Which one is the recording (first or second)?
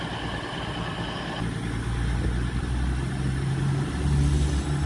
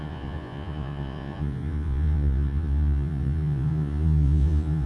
first